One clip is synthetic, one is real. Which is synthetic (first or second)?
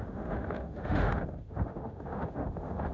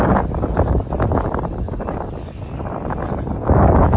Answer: first